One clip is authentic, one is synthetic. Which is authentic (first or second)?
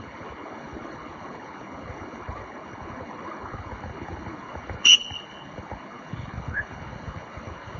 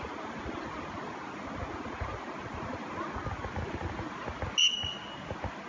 second